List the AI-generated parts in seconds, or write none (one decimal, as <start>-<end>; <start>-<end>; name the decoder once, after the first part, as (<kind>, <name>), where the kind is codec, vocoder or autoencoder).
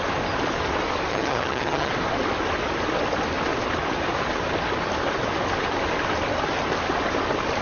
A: 1.1-1.9 (vocoder, HiFi-GAN)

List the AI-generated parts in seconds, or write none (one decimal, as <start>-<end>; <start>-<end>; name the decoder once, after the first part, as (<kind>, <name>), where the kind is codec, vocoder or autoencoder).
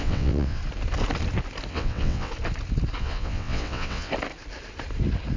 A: 0.0-0.6 (vocoder, WaveNeXt); 1.7-2.3; 3.0-4.1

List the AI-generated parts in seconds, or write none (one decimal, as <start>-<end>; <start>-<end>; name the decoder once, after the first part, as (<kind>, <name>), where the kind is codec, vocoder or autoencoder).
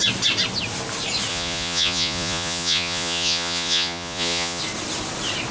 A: 1.3-4.6 (vocoder, Vocos)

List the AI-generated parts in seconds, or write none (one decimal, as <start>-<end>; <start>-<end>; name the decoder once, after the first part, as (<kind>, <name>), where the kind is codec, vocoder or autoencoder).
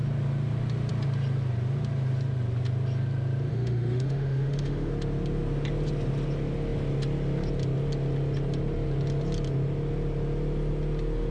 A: 3.5-4.9 (autoencoder, DAC-VAE)